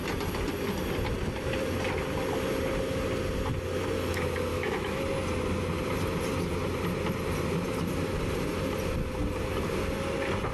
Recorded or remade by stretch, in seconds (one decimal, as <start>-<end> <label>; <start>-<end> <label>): 0.0-4.5 recorded; 4.5-5.0 remade; 5.0-10.5 recorded